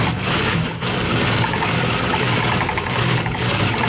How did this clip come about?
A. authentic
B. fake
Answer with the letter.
B